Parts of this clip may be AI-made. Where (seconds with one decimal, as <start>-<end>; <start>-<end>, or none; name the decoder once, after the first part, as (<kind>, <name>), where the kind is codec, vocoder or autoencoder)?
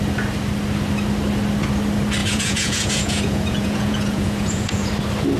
2.2-4.9 (vocoder, Vocos)